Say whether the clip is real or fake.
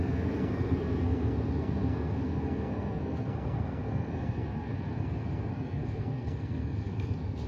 fake